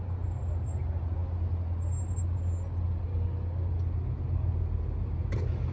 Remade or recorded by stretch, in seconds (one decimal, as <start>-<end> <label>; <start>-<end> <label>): 0.0-5.7 recorded